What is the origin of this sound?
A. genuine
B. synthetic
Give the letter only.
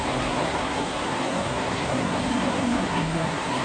B